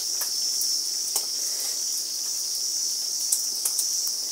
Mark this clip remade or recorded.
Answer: recorded